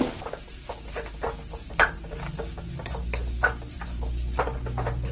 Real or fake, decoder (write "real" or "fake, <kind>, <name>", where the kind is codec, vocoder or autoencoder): real